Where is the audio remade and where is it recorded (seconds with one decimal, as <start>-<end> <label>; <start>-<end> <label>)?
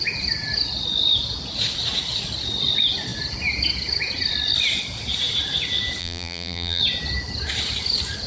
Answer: 0.0-6.0 recorded; 6.0-6.8 remade; 6.8-8.3 recorded